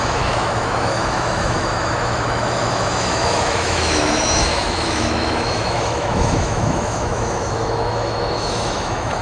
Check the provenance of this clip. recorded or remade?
remade